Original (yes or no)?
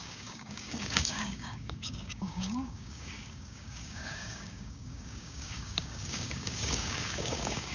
no